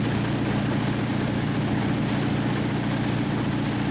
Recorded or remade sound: recorded